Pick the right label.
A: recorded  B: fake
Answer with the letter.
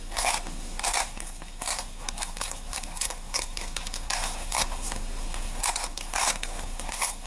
B